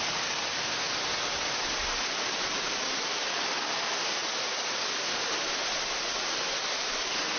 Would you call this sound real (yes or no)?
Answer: yes